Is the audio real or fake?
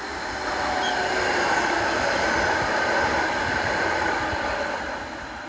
real